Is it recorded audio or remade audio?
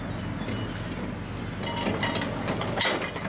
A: recorded